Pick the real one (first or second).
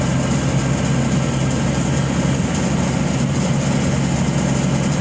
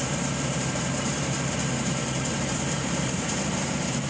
first